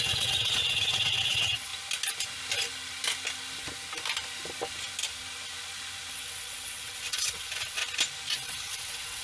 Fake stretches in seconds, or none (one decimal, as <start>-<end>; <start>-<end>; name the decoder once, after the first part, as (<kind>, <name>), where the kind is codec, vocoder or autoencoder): 0.0-1.7 (vocoder, WaveNeXt); 6.1-7.8; 8.3-9.2